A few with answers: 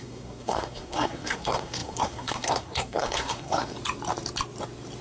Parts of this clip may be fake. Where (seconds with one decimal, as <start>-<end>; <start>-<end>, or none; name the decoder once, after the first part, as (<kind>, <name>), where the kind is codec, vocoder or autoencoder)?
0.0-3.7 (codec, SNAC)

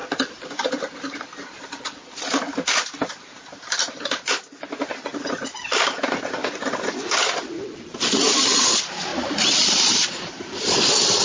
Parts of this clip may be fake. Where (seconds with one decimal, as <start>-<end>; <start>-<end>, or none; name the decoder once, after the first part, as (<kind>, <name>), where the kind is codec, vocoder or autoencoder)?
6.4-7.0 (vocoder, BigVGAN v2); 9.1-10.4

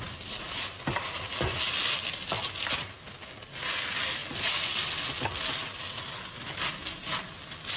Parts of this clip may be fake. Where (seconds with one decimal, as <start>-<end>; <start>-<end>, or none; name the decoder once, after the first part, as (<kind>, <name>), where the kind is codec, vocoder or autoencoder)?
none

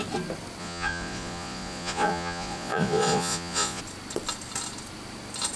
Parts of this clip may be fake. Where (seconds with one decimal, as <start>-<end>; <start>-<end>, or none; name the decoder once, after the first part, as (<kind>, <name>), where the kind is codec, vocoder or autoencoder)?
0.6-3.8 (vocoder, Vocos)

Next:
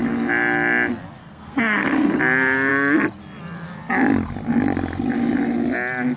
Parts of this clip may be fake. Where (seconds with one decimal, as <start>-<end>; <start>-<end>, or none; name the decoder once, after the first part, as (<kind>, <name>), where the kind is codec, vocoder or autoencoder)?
1.2-2.2 (codec, SNAC)

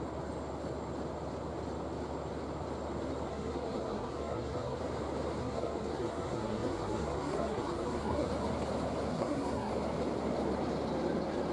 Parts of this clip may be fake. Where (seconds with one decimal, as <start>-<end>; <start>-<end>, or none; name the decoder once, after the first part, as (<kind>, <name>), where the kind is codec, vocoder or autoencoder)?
3.3-4.8 (codec, SNAC); 5.4-8.3; 9.1-9.7

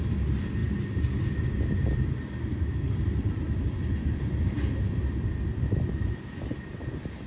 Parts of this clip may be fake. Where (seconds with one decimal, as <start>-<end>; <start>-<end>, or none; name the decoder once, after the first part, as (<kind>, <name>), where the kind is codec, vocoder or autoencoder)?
none